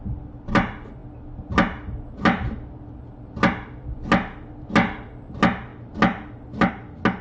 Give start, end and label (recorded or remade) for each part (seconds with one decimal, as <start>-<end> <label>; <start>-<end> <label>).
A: 0.0-7.2 recorded